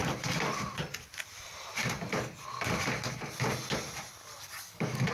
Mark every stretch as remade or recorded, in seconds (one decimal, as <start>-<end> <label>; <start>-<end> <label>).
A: 0.0-4.2 recorded; 4.2-5.1 remade